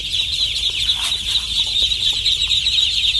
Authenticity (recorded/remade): recorded